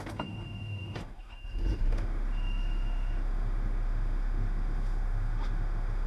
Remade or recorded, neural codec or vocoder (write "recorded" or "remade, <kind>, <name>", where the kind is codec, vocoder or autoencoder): remade, autoencoder, DAC-VAE